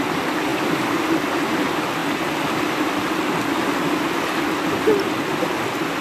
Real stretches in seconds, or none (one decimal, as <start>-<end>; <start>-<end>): 0.0-6.0